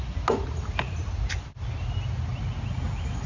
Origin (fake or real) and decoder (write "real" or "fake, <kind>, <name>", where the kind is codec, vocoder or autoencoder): real